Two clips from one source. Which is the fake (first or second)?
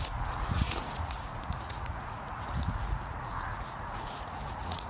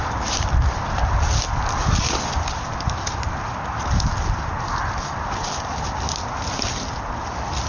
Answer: first